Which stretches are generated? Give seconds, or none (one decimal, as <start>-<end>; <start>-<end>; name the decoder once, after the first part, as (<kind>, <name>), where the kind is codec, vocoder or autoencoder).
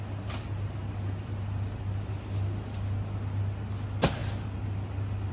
none